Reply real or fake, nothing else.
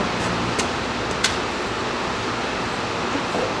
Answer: real